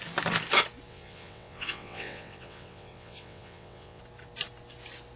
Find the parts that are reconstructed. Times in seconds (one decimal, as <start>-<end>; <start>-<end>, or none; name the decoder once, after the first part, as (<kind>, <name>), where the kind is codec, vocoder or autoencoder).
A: 0.9-4.0 (vocoder, WaveNeXt)